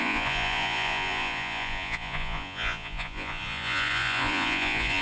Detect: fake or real fake